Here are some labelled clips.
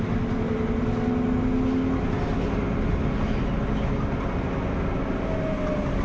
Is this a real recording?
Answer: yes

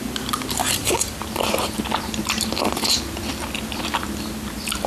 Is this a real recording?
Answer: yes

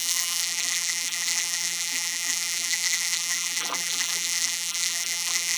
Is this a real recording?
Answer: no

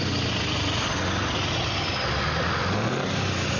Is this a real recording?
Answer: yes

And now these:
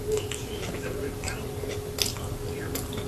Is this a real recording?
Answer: yes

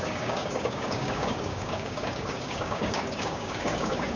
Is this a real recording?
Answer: no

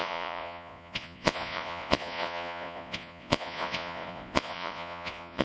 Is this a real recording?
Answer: no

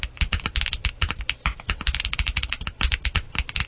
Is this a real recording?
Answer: yes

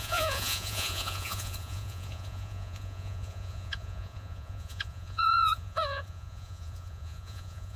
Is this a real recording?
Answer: no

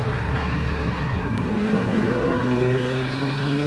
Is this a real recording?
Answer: no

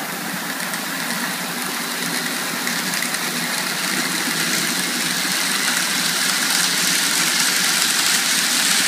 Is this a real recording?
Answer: yes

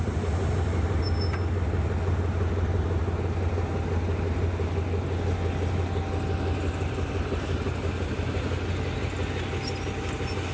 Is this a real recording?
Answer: yes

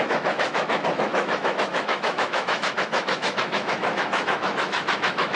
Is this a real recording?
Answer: no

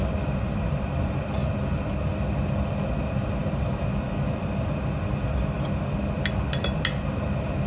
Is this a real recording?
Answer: yes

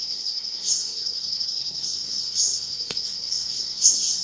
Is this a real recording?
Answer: no